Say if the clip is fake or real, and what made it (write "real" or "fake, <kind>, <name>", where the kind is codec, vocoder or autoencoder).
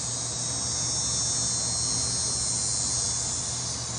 real